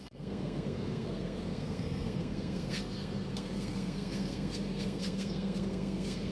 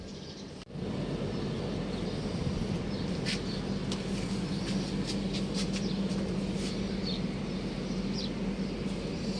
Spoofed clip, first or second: first